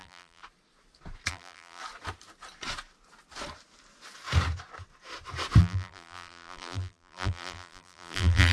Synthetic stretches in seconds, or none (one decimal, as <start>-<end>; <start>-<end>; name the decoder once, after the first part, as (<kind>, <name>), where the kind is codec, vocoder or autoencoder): 0.0-0.4 (vocoder, BigVGAN v2); 1.3-1.8; 5.6-8.5